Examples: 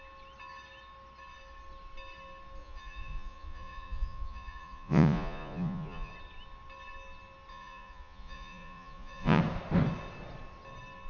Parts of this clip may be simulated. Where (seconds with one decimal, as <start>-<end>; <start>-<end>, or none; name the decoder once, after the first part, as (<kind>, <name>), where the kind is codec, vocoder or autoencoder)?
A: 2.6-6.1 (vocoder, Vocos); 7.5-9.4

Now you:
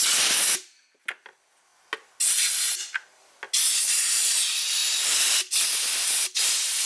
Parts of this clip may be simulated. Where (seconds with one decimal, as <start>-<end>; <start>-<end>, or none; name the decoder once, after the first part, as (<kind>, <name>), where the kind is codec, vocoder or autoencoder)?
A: none

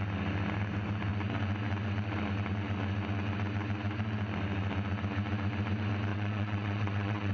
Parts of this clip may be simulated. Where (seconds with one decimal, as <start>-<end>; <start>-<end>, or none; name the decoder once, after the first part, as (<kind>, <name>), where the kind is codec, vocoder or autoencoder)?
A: 6.1-7.3 (vocoder, Vocos)

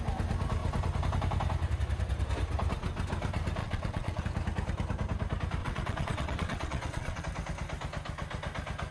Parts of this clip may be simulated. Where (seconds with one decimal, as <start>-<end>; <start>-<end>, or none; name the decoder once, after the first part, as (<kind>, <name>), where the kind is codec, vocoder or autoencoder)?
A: 3.6-4.2 (vocoder, WaveNeXt); 5.6-7.2

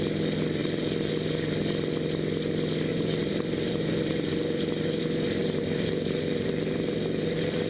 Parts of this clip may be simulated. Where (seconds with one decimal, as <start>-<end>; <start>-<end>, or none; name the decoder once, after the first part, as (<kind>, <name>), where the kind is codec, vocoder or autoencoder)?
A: 0.6-1.1 (vocoder, BigVGAN v2); 2.9-5.0; 5.4-7.7